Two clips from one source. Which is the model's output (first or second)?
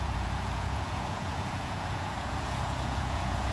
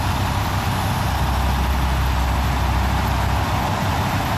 first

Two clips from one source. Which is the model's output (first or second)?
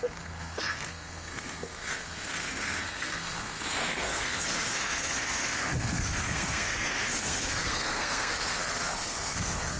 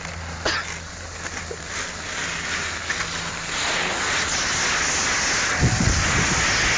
first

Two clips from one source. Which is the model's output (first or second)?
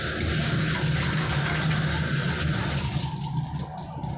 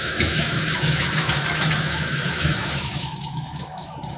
second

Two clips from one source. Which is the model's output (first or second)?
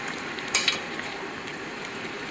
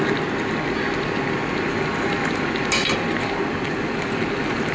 first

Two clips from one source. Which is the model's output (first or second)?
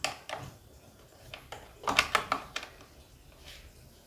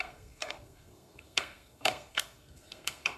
second